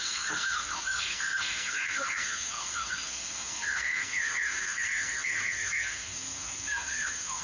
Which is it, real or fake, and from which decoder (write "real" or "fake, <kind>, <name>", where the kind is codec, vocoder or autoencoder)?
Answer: fake, codec, SNAC